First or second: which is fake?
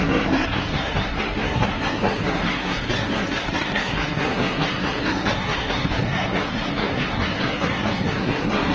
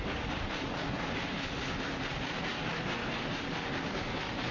first